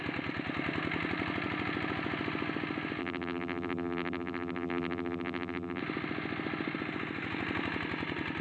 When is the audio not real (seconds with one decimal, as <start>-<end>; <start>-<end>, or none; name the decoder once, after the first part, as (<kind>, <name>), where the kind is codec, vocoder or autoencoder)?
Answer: 3.0-5.8 (vocoder, BigVGAN v2)